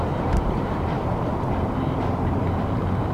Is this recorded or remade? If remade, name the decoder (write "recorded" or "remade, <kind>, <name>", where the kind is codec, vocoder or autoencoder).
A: remade, vocoder, BigVGAN v2